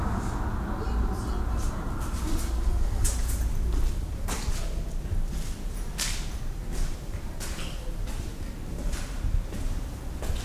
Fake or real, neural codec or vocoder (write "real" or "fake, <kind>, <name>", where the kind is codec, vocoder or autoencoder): real